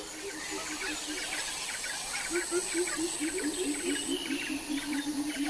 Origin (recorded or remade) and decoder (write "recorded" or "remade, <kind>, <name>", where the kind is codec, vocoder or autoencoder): recorded